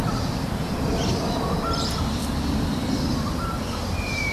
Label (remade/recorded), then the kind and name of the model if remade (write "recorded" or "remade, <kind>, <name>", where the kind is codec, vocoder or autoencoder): remade, vocoder, BigVGAN v2